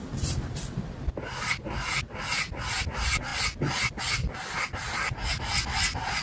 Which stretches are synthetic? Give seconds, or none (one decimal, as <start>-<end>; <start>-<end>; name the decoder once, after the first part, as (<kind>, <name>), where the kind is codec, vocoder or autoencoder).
none